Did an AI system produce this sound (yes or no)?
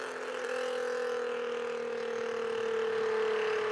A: no